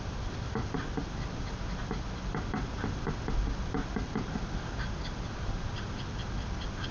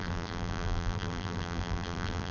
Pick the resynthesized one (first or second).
second